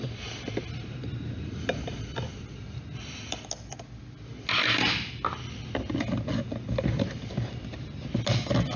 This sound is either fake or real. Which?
real